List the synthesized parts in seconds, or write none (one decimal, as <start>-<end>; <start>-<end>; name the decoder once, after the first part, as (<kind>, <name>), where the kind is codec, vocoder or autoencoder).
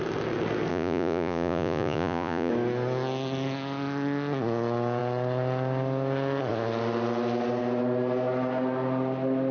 0.7-2.5 (vocoder, Vocos)